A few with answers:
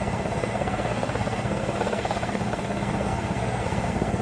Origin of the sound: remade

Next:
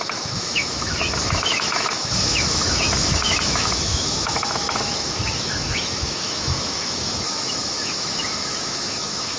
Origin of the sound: remade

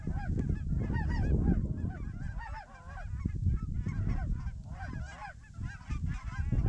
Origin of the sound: recorded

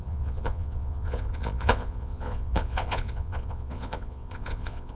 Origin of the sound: remade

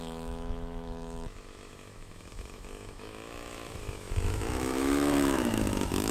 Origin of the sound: remade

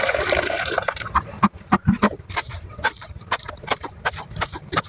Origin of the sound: remade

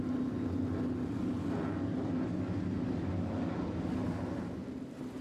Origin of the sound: recorded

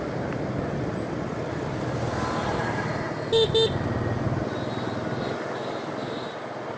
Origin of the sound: recorded